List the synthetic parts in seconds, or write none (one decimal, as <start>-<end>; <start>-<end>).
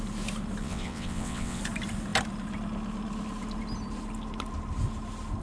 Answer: 0.6-1.6